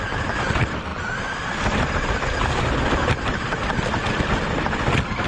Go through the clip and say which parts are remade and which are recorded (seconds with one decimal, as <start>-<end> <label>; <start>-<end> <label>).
0.0-5.3 recorded